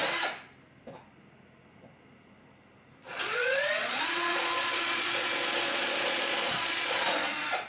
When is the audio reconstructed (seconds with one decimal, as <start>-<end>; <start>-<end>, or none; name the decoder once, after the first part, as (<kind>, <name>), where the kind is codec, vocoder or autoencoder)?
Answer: 3.0-7.7 (vocoder, Vocos)